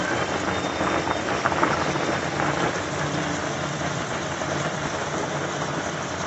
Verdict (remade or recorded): remade